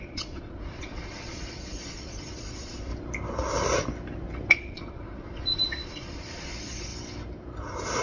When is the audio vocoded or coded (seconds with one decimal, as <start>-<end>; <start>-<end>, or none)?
0.0-2.9; 4.5-6.9